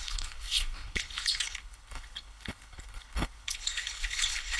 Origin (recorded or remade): remade